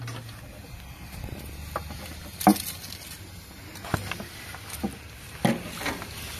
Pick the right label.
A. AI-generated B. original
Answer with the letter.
B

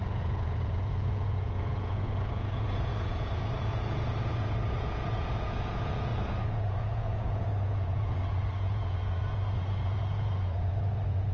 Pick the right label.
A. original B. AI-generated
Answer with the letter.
B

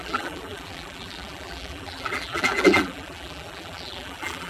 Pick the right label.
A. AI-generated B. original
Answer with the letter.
A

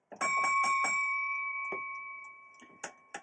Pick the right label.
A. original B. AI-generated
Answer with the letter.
A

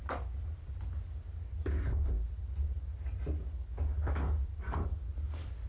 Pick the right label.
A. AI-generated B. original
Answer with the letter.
B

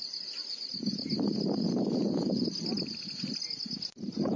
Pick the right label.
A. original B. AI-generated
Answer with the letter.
A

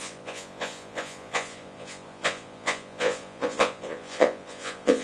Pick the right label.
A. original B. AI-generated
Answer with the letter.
B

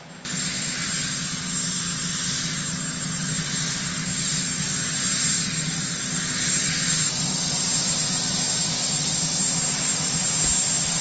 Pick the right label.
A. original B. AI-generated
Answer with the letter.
A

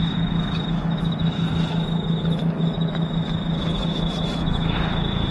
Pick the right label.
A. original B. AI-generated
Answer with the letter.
B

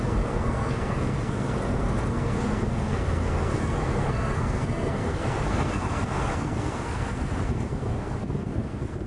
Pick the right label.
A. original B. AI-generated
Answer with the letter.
B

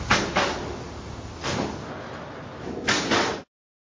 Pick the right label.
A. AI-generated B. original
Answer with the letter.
B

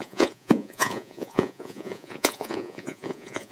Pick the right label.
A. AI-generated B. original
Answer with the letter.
A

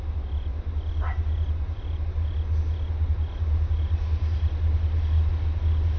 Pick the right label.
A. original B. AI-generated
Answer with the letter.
A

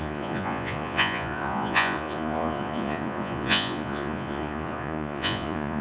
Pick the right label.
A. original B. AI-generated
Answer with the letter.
B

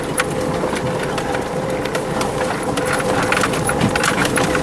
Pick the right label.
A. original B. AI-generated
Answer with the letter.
B